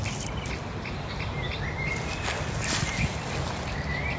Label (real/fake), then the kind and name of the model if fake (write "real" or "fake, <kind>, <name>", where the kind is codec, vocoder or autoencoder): real